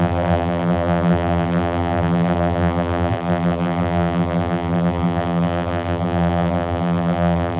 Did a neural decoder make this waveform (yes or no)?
yes